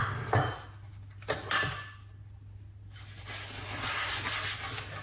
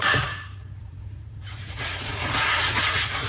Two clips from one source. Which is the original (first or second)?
first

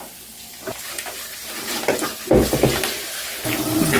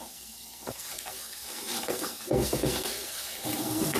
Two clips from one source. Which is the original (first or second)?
first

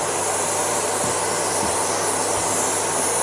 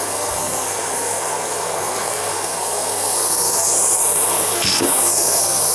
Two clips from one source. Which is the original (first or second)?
first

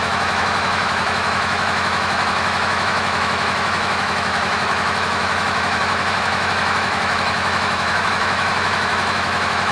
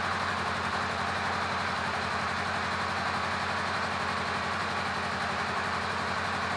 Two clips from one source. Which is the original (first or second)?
second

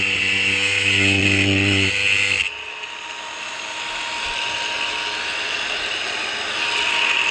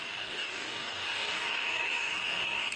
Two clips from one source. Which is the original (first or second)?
first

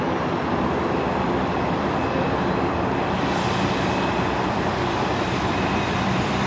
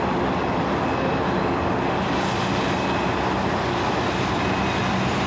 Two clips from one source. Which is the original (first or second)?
second